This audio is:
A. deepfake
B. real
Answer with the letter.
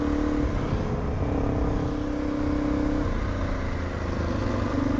B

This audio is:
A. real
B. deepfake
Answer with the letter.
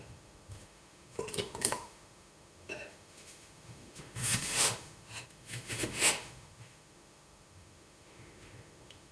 B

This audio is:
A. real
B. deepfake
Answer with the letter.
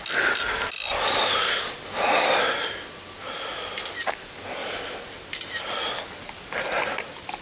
A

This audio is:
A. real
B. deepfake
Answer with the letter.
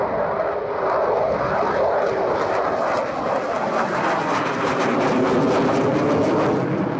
A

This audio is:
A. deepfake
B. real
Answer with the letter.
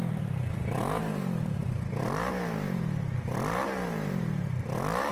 B